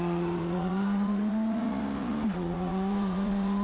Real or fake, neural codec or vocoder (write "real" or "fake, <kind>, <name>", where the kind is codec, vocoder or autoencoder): fake, vocoder, Vocos